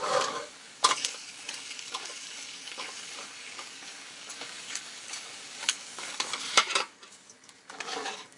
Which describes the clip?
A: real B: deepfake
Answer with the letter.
B